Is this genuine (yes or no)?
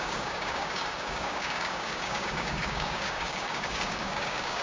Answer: no